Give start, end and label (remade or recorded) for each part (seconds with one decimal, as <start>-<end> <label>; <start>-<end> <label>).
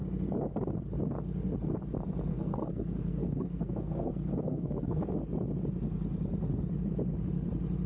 0.0-2.3 recorded; 2.3-5.0 remade; 5.0-7.9 recorded